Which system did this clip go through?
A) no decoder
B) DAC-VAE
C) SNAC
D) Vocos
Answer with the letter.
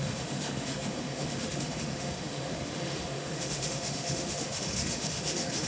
B